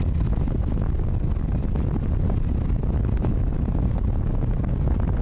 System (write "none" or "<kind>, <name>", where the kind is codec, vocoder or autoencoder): none